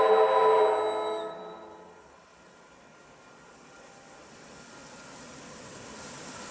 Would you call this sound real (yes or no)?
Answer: yes